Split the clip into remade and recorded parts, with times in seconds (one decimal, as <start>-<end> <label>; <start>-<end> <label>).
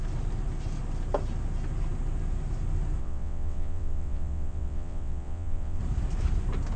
0.0-3.0 recorded; 3.0-5.8 remade; 5.8-6.8 recorded